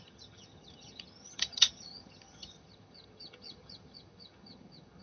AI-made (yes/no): yes